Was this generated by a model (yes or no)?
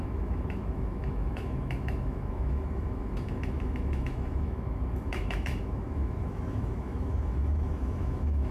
yes